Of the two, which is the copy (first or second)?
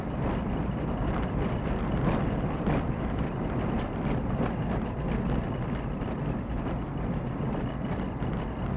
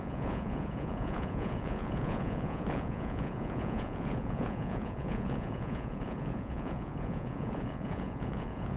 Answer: second